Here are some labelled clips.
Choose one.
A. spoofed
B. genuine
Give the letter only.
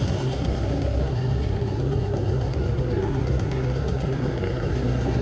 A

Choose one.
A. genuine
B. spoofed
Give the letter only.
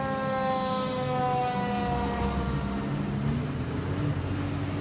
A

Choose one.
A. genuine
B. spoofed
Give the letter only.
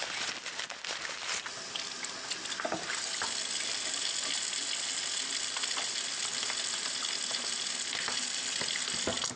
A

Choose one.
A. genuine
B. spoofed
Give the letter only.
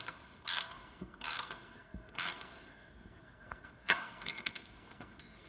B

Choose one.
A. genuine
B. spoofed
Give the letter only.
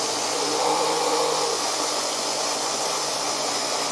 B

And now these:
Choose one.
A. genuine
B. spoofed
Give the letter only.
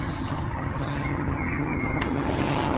B